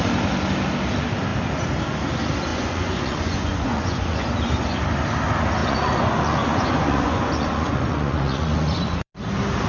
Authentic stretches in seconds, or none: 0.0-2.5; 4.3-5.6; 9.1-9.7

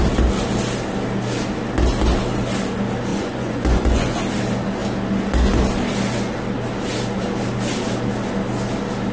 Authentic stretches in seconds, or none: 0.0-3.1; 4.2-9.1

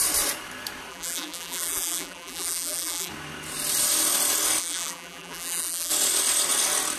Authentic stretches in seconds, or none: 0.0-0.9; 3.1-4.6; 5.9-7.0

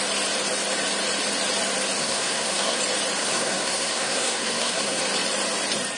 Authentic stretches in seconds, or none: 0.0-2.0; 2.8-3.2; 5.0-6.0

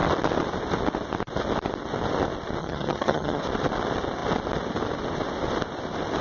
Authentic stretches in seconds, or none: 0.0-2.6; 3.4-6.2

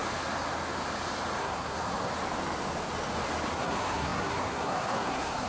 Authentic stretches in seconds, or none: 0.0-1.4; 2.1-3.5